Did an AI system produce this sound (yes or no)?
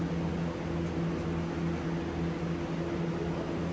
no